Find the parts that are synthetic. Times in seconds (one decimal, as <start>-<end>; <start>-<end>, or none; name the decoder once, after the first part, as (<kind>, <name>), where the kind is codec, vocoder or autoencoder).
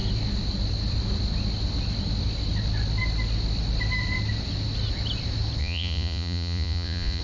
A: 5.6-7.2 (vocoder, Vocos)